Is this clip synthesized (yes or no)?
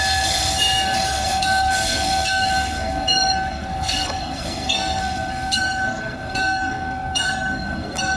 yes